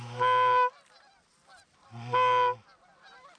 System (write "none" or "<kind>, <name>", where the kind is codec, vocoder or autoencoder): none